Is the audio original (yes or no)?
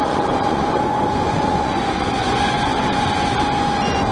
no